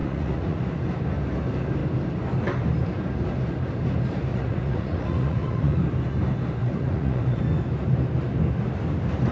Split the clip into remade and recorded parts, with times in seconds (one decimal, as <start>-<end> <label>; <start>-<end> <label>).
0.0-0.6 remade; 0.6-4.3 recorded; 4.3-5.8 remade; 5.8-6.6 recorded; 6.6-7.4 remade; 7.4-9.3 recorded